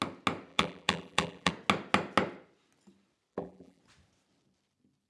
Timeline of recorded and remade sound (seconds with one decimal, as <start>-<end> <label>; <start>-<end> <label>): 0.0-0.5 recorded; 0.5-1.5 remade; 1.5-3.3 recorded; 3.3-3.8 remade; 3.8-5.1 recorded